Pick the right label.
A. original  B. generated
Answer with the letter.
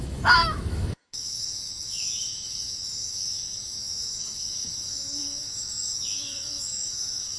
B